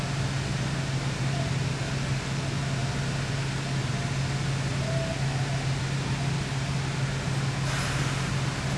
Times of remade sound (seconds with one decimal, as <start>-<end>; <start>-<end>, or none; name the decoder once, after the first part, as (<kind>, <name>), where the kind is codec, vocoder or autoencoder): none